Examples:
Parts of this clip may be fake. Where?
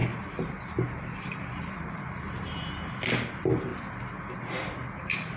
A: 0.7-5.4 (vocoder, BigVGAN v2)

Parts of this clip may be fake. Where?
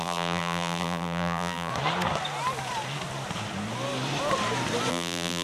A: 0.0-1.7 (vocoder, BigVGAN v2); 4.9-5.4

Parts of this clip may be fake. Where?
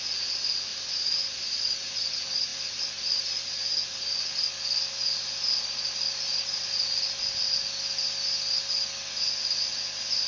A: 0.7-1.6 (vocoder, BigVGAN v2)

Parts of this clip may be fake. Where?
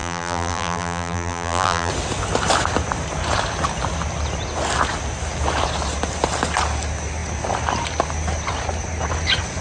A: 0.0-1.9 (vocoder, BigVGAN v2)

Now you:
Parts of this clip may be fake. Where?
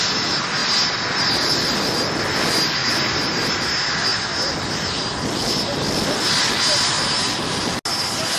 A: none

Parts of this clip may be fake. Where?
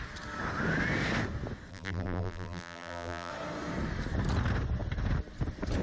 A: 1.7-3.3 (vocoder, BigVGAN v2)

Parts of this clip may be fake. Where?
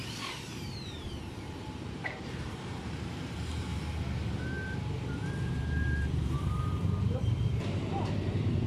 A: 0.0-3.7 (vocoder, BigVGAN v2); 5.5-8.7